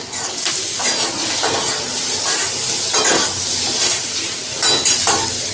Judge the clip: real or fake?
real